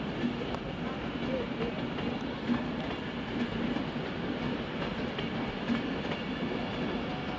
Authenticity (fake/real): real